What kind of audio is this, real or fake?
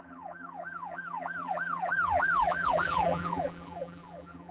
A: fake